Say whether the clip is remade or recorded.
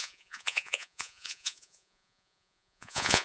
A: remade